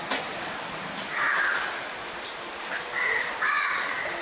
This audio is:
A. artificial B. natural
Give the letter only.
B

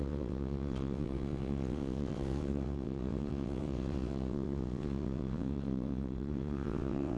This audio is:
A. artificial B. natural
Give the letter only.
A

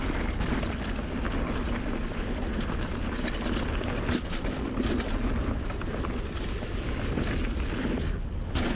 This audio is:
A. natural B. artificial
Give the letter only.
A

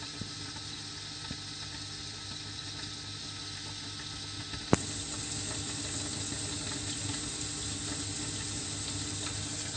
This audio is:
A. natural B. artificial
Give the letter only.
A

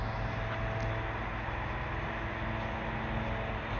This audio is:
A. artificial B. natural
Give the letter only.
B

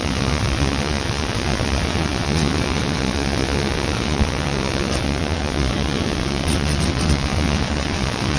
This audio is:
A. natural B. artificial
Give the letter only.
B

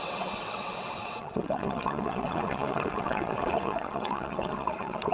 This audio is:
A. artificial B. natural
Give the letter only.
A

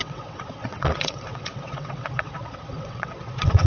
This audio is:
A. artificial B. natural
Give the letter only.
A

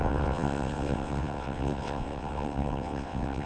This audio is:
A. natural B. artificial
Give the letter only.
B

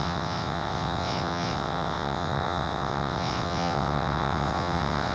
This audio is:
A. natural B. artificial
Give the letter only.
B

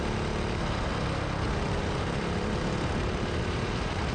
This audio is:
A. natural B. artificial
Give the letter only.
A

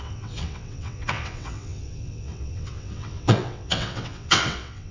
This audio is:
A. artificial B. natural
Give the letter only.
A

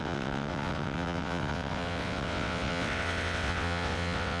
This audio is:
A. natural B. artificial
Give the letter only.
B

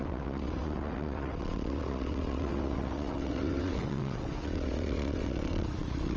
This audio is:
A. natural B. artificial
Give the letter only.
B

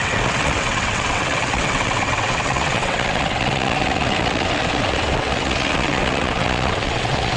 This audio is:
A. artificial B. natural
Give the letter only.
A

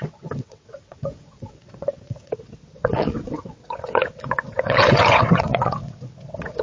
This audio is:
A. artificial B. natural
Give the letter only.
A